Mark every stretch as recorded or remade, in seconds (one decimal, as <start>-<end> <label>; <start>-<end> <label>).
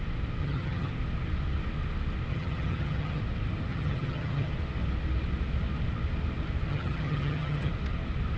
0.0-0.4 recorded; 0.4-0.9 remade; 0.9-2.3 recorded; 2.3-3.2 remade; 3.2-3.7 recorded; 3.7-4.5 remade; 4.5-6.7 recorded; 6.7-7.7 remade; 7.7-8.4 recorded